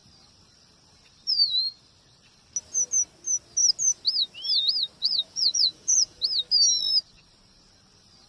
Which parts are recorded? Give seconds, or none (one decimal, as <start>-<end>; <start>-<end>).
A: 0.0-5.0; 6.2-8.3